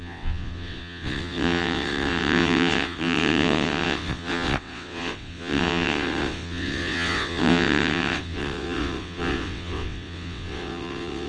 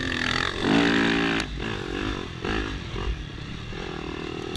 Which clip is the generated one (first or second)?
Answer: first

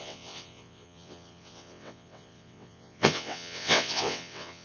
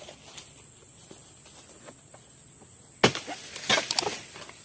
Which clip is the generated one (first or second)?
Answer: first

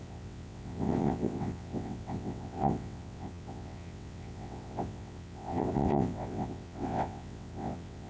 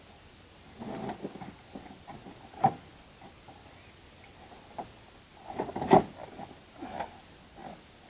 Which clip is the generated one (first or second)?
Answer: first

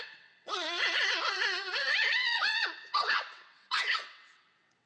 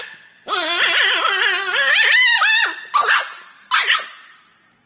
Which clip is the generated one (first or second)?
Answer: first